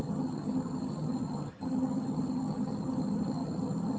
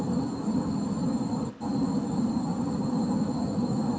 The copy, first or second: first